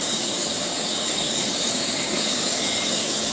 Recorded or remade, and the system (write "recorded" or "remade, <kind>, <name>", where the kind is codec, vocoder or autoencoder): remade, codec, DAC